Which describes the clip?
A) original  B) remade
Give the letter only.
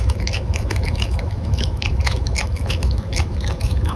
B